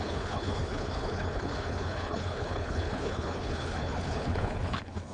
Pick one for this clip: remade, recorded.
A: remade